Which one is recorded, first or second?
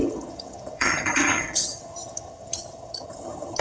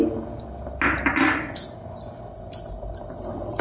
second